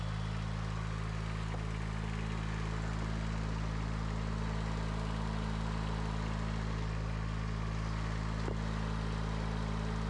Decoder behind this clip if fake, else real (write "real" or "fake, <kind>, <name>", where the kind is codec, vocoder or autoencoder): real